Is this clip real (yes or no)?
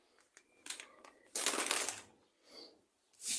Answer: yes